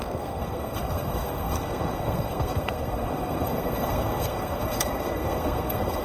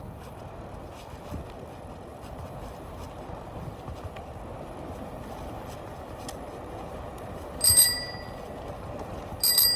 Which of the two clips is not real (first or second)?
first